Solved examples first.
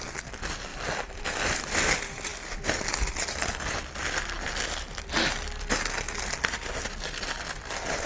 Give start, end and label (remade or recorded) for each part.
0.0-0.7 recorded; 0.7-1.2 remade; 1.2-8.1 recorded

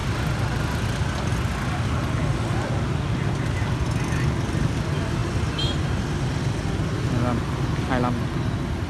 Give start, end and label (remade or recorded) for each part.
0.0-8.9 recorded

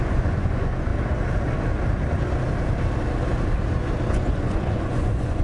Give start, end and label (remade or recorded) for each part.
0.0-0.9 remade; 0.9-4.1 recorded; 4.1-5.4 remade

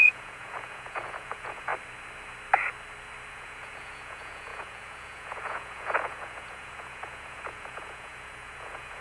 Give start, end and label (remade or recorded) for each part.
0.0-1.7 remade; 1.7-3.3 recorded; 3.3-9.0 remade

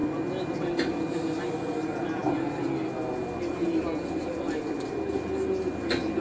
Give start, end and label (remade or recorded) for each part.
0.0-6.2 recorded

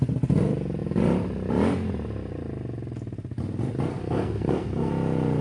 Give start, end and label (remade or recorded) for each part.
0.0-3.9 recorded; 3.9-4.9 remade; 4.9-5.4 recorded